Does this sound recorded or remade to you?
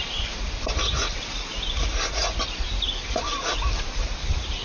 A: recorded